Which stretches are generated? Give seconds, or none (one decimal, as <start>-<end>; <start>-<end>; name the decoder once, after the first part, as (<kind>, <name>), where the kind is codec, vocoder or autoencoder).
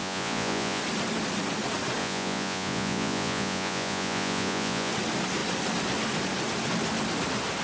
0.0-0.8 (vocoder, Vocos); 2.0-4.9